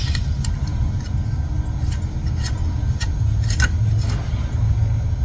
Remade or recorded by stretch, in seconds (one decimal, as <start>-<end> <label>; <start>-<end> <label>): 0.0-5.2 recorded